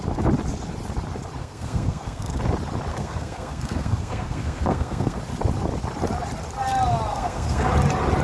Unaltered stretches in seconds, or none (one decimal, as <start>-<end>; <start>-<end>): 0.0-1.4; 2.4-2.9; 5.2-7.1; 7.7-8.2